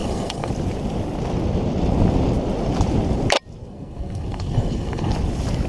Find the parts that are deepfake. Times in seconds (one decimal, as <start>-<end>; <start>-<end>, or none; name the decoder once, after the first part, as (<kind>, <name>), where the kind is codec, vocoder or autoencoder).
0.0-0.5 (codec, SNAC); 3.6-5.1